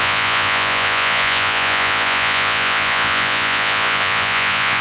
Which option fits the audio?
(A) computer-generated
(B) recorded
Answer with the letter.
A